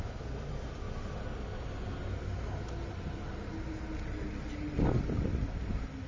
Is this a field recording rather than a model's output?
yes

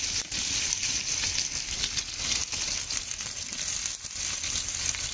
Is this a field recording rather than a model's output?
yes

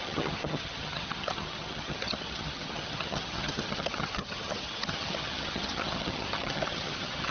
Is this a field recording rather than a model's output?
no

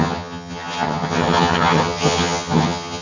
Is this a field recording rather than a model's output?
no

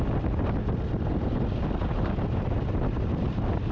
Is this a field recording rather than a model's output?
yes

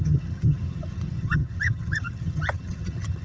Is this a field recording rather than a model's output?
no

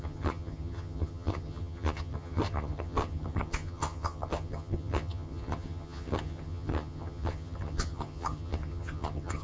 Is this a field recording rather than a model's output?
no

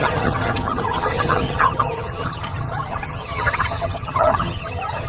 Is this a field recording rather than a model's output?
no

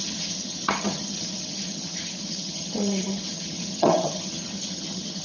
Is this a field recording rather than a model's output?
no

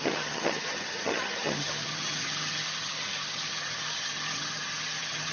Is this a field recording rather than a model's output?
no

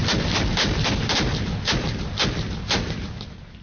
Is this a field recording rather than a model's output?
yes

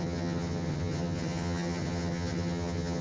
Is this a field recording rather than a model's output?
no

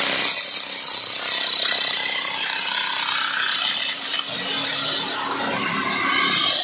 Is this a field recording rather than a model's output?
yes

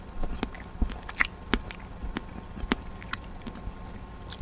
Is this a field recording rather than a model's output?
yes